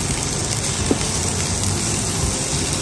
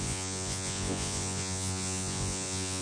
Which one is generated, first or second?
second